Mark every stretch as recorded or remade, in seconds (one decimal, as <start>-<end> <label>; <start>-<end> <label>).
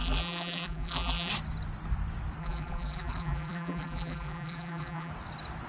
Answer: 0.0-1.3 remade; 1.3-2.4 recorded; 2.4-5.1 remade; 5.1-5.7 recorded